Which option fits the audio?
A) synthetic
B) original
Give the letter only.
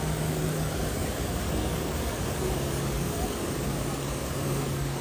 A